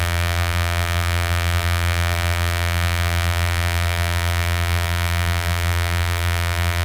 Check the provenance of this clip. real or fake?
fake